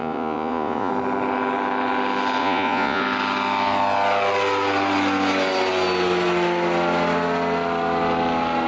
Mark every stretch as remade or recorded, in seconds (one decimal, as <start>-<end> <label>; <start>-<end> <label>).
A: 0.0-0.9 remade; 0.9-2.4 recorded; 2.4-3.0 remade; 3.0-8.7 recorded